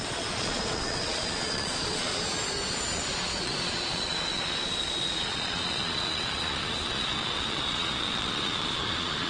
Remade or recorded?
remade